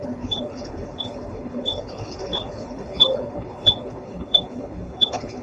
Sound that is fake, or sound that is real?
fake